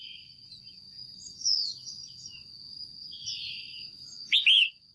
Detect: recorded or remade recorded